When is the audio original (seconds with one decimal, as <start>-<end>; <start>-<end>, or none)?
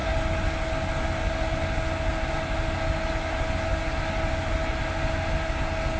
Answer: 0.0-6.0